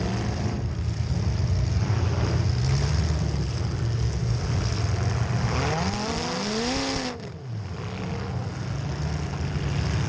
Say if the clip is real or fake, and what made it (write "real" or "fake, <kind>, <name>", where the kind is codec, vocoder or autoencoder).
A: real